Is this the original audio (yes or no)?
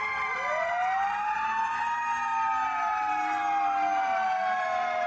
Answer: yes